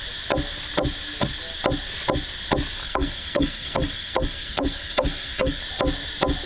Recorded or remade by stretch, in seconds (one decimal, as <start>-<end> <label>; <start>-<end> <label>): 0.0-2.8 recorded; 2.8-5.6 remade; 5.6-6.5 recorded